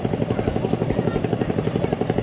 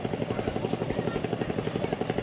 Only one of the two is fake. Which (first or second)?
first